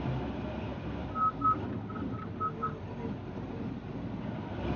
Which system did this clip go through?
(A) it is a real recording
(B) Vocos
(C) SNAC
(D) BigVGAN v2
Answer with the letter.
A